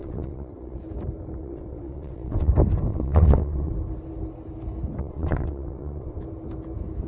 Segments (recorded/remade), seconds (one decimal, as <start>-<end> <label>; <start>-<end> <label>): 0.0-0.8 remade; 0.8-1.4 recorded; 1.4-2.5 remade; 2.5-2.9 recorded; 2.9-3.7 remade; 3.7-5.0 recorded; 5.0-6.2 remade; 6.2-7.1 recorded